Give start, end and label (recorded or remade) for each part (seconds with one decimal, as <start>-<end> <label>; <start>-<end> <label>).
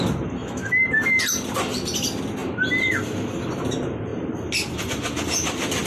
0.0-0.4 recorded; 0.4-1.2 remade; 1.2-5.9 recorded